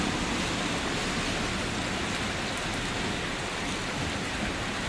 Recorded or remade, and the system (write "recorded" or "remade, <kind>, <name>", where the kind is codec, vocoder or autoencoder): recorded